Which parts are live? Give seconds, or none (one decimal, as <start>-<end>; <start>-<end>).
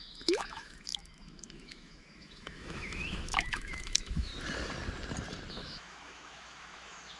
4.3-5.5